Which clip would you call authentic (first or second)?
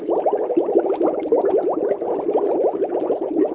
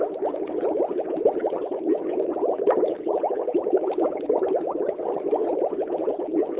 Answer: first